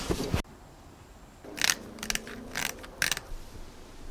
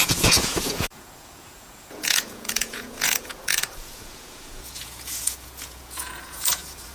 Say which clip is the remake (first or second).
second